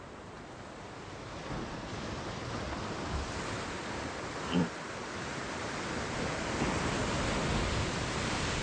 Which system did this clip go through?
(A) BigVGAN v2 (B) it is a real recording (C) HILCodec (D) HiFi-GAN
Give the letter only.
B